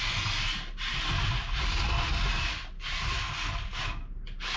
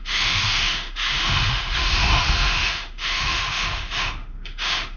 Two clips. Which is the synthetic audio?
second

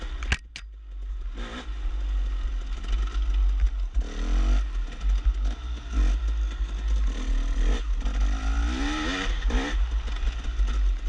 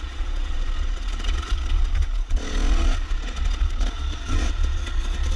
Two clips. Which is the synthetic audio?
second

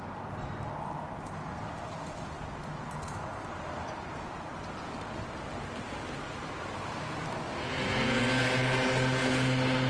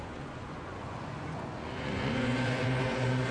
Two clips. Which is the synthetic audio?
second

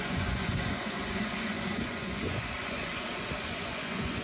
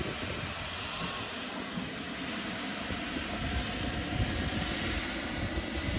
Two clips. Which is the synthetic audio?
first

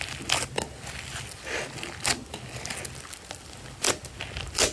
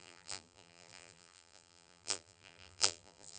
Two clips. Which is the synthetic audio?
second